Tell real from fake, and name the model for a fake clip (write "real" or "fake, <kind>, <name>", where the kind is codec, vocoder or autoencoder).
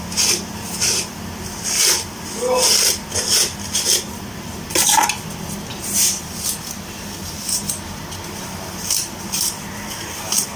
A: real